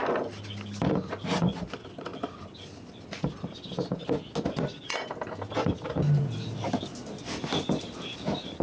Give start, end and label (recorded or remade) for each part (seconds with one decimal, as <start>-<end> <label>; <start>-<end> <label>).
0.0-8.6 recorded